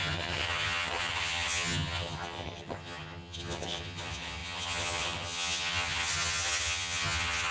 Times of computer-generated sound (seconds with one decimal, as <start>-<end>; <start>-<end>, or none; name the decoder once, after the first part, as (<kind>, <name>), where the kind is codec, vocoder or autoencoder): 0.0-7.5 (vocoder, HiFi-GAN)